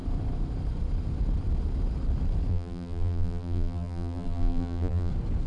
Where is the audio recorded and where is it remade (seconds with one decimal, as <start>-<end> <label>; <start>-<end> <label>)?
0.0-2.5 recorded; 2.5-5.1 remade; 5.1-5.5 recorded